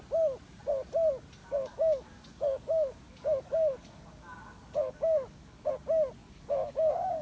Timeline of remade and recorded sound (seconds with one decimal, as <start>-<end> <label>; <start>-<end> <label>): 0.0-1.4 recorded; 1.4-5.7 remade; 5.7-6.2 recorded; 6.2-7.2 remade